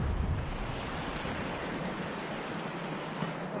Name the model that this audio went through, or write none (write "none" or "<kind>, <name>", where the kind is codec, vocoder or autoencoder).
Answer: none